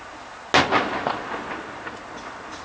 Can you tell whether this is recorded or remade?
recorded